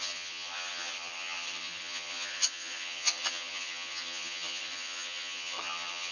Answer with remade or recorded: remade